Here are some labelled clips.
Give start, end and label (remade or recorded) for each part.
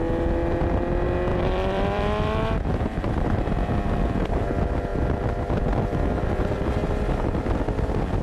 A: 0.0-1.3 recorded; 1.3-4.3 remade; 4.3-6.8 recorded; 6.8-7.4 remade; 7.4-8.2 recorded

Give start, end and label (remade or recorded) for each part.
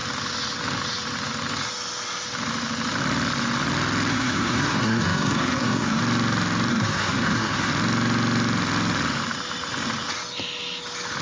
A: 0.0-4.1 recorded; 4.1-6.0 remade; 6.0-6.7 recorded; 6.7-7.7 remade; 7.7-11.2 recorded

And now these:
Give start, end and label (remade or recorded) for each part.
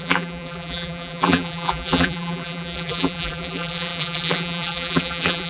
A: 0.0-5.5 remade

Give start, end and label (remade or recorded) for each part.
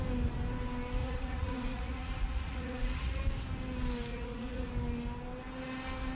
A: 0.0-1.0 recorded; 1.0-3.2 remade; 3.2-4.1 recorded; 4.1-4.7 remade; 4.7-6.2 recorded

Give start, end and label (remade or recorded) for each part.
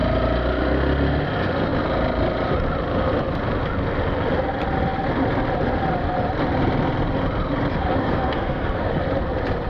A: 0.0-8.0 recorded; 8.0-8.9 remade; 8.9-9.7 recorded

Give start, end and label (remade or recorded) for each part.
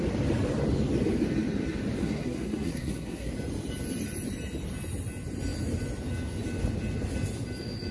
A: 0.0-2.0 recorded; 2.0-3.3 remade; 3.3-7.9 recorded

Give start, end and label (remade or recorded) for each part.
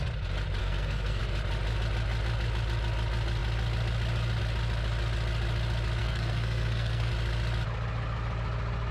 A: 0.0-0.6 recorded; 0.6-1.2 remade; 1.2-6.0 recorded; 6.0-7.1 remade; 7.1-8.9 recorded